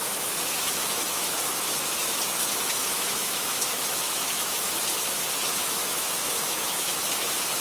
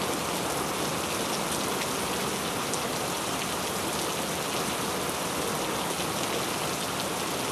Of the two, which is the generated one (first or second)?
first